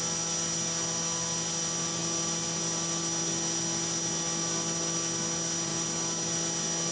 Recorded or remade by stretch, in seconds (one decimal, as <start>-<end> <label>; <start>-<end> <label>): 0.0-6.9 recorded